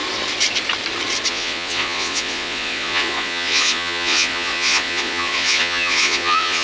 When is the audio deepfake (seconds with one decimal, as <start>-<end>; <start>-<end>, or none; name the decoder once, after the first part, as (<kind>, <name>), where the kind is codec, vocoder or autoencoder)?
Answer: 1.3-6.6 (vocoder, Vocos)